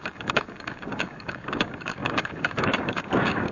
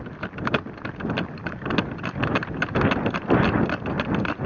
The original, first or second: second